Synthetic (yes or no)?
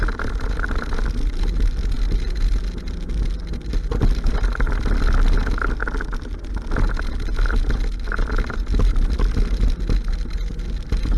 no